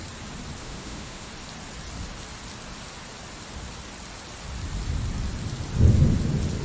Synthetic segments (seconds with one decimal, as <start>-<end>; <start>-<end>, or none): 0.6-1.3